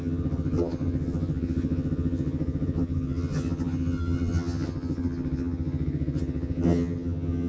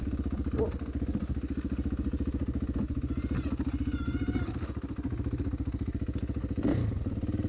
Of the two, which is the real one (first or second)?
second